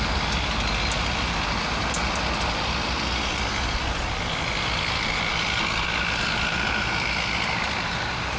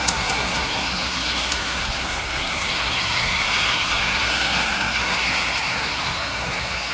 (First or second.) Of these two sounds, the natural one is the first